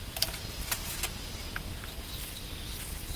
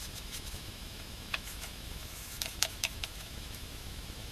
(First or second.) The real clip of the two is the first